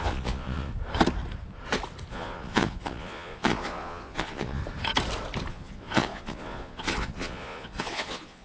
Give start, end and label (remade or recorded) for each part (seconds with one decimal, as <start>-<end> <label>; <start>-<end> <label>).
0.0-0.7 remade; 0.7-2.1 recorded; 2.1-4.6 remade; 4.6-5.5 recorded; 5.5-8.4 remade